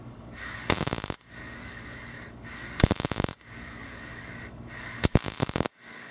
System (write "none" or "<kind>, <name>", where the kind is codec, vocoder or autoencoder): codec, DAC